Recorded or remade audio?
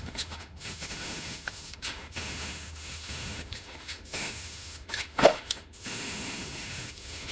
remade